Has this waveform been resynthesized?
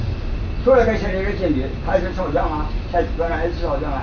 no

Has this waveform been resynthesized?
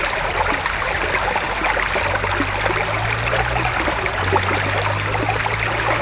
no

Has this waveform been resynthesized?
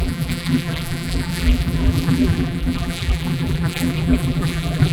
yes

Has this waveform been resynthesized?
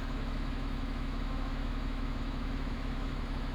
yes